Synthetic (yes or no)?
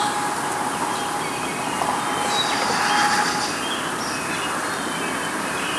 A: no